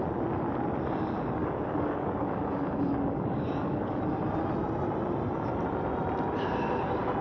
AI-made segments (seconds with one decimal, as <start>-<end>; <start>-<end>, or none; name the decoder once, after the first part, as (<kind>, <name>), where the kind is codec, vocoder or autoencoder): 1.4-4.0 (codec, DAC)